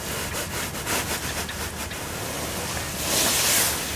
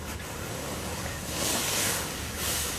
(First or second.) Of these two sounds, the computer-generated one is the second